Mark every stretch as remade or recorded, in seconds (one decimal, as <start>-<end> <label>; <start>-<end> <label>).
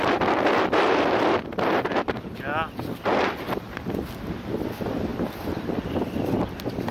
0.0-5.1 recorded; 5.1-6.2 remade; 6.2-6.9 recorded